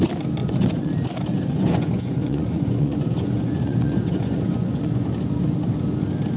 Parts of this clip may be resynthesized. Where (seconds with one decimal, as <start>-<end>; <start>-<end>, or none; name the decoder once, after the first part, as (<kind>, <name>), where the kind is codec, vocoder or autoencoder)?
0.4-0.9 (vocoder, Vocos); 1.3-5.1